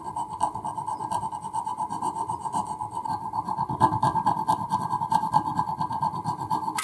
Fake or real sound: real